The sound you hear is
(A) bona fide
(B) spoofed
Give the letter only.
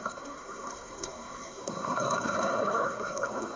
B